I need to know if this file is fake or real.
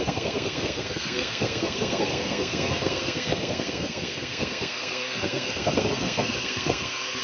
fake